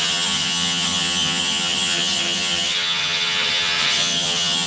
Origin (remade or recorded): remade